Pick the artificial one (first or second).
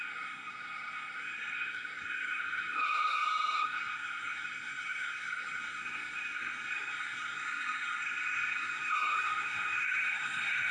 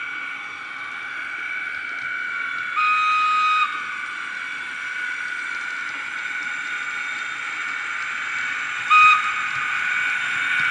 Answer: first